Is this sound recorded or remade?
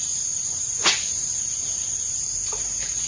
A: recorded